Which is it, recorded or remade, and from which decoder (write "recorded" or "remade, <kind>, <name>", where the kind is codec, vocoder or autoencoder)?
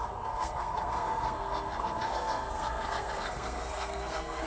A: remade, codec, SNAC